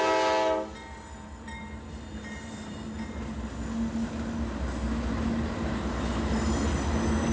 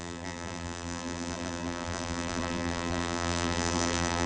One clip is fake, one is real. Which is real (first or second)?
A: first